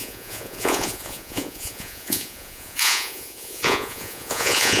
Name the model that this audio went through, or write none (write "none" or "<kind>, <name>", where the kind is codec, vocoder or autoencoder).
vocoder, Vocos